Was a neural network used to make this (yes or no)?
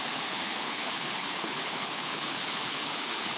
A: yes